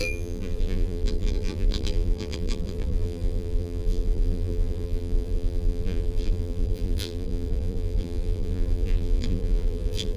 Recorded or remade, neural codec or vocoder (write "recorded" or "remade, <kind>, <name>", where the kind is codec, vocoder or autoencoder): remade, vocoder, BigVGAN v2